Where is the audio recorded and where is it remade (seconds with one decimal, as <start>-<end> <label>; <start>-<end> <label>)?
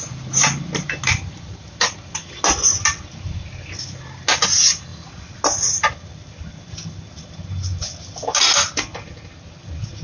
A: 0.0-10.0 recorded